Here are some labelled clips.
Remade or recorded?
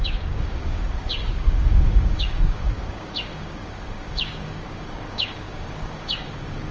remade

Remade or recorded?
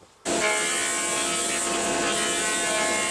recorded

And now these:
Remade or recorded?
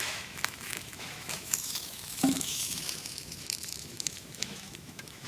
remade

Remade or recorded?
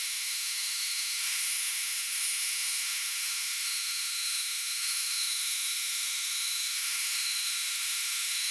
remade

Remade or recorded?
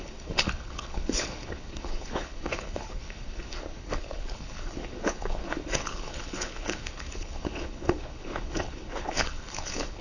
remade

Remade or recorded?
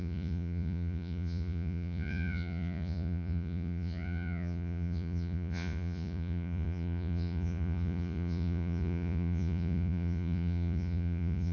remade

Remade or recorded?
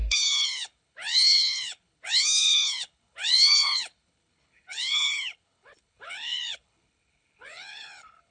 remade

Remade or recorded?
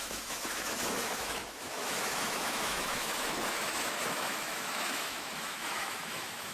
remade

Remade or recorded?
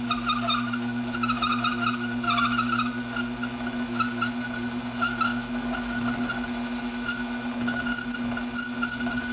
recorded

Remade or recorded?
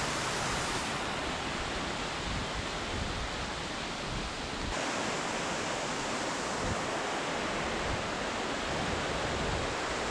recorded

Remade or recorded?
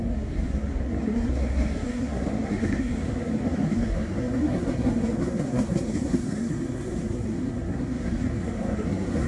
remade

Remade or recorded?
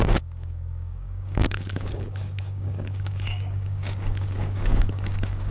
remade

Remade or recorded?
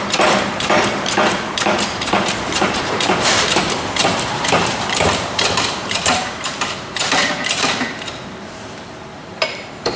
remade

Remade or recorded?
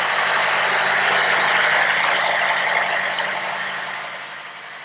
recorded